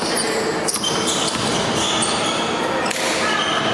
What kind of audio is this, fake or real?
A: real